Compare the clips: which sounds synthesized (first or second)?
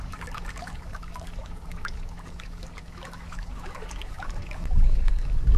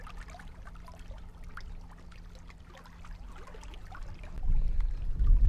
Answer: first